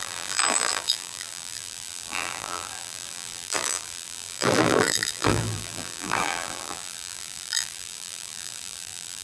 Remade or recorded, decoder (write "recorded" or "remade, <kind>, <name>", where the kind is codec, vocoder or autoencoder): remade, vocoder, BigVGAN v2